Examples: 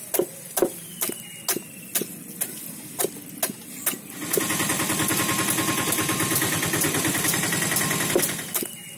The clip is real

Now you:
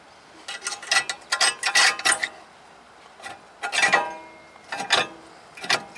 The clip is real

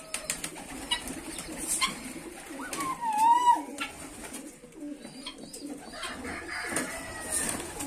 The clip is real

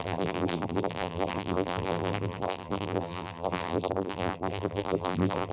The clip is fake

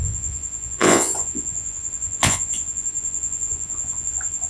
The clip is fake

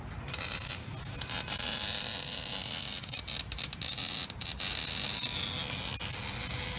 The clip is real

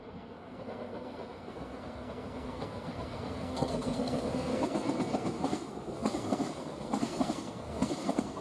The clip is fake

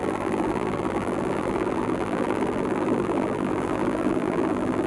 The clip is fake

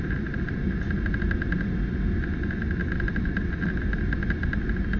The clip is real